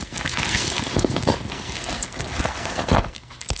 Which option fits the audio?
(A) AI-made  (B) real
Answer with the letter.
A